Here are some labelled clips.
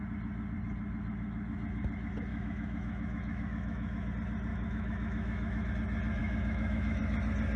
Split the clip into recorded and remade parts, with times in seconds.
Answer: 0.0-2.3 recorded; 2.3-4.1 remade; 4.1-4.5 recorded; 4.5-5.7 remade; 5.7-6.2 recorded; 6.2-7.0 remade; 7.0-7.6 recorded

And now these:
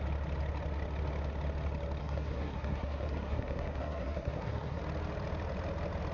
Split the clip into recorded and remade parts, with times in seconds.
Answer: 0.0-2.0 recorded; 2.0-4.8 remade; 4.8-6.1 recorded

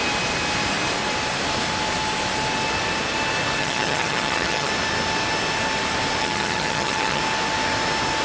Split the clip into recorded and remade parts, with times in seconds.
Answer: 0.0-3.6 recorded; 3.6-4.7 remade; 4.7-6.2 recorded; 6.2-7.2 remade; 7.2-8.2 recorded

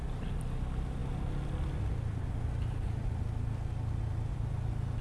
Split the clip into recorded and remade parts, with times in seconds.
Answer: 0.0-5.0 recorded

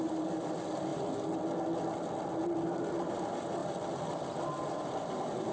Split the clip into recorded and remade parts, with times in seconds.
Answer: 0.0-5.5 recorded